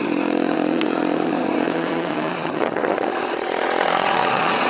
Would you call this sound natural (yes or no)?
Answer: no